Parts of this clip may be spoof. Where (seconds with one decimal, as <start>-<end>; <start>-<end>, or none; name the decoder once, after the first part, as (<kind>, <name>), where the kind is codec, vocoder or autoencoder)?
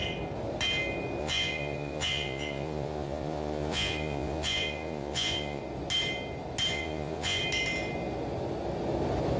1.2-5.6 (vocoder, Vocos); 6.7-7.4